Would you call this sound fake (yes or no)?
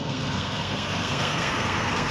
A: yes